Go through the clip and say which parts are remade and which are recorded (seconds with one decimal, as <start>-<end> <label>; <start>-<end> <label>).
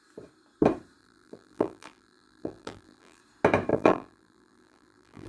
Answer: 0.0-1.0 recorded; 1.0-3.2 remade; 3.2-3.7 recorded; 3.7-5.3 remade